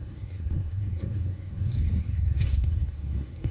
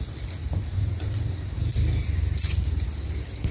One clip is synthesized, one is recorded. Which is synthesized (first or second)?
first